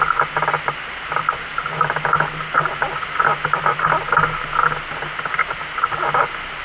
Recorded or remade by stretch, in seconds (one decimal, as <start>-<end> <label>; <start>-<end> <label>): 0.0-6.6 recorded